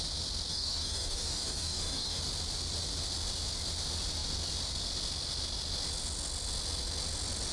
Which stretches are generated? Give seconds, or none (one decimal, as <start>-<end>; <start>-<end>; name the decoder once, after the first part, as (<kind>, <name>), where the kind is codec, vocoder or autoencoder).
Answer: 0.5-2.2 (codec, DAC)